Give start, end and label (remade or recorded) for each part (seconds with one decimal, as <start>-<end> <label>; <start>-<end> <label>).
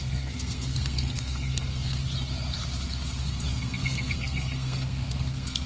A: 0.0-2.0 remade; 2.0-3.2 recorded; 3.2-5.7 remade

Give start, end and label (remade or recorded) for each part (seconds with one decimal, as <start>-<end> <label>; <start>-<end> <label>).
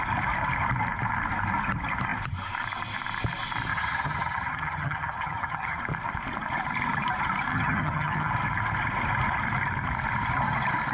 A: 0.0-3.7 recorded; 3.7-5.8 remade; 5.8-7.5 recorded; 7.5-8.3 remade; 8.3-10.9 recorded